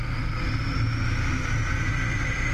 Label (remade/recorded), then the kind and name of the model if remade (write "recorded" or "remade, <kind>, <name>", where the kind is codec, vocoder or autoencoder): remade, vocoder, BigVGAN v2